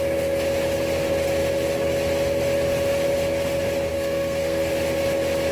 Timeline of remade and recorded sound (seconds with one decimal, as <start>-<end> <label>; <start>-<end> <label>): 0.0-3.9 recorded; 3.9-4.7 remade; 4.7-5.5 recorded